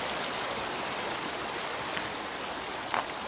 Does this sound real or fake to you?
real